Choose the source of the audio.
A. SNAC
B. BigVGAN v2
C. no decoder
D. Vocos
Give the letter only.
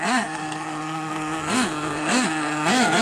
A